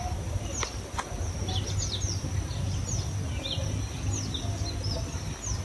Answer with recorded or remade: recorded